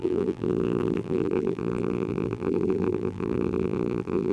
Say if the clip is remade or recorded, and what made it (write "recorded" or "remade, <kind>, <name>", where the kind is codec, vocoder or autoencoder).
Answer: remade, vocoder, BigVGAN v2